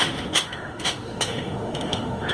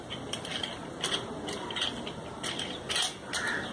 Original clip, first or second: second